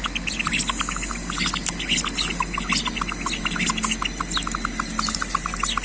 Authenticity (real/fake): real